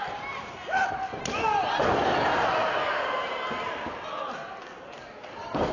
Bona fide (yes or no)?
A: yes